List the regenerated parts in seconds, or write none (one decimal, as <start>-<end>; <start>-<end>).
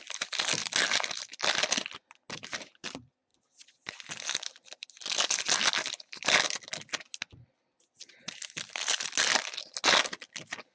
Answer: none